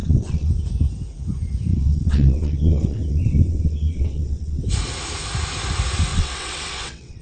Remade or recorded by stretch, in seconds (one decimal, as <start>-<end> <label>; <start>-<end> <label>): 0.0-0.5 remade; 0.5-1.7 recorded; 1.7-4.6 remade; 4.6-6.1 recorded; 6.1-7.2 remade